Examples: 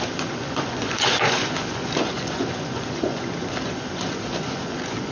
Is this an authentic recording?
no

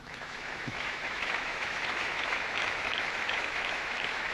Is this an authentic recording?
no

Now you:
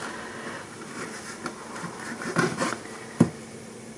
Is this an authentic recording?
yes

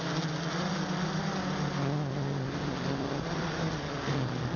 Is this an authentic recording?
yes